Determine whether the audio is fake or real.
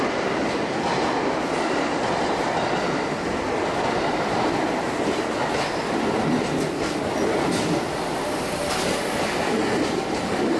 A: real